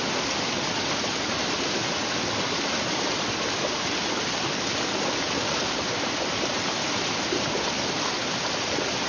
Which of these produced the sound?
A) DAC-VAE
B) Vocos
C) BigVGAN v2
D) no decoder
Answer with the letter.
D